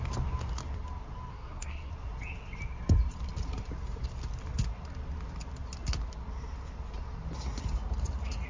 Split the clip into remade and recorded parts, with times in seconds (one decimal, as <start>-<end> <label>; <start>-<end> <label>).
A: 0.0-1.3 recorded; 1.3-1.9 remade; 1.9-8.5 recorded